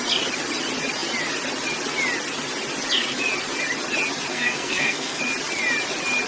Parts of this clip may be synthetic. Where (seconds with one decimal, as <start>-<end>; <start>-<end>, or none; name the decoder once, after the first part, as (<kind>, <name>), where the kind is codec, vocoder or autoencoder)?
4.3-5.2 (codec, SNAC)